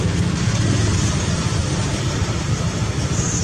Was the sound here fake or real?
real